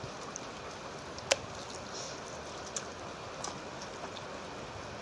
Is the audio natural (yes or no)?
yes